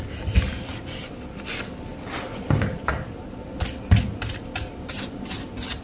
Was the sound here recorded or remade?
recorded